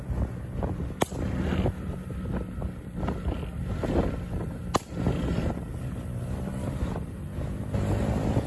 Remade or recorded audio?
recorded